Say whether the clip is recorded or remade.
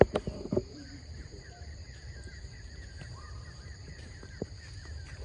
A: remade